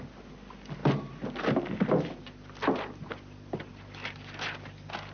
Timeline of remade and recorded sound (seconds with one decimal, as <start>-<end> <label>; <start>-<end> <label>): 0.0-5.1 recorded